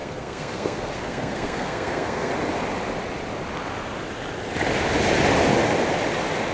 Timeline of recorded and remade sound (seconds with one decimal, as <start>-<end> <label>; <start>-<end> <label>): 0.0-2.3 remade; 2.3-6.5 recorded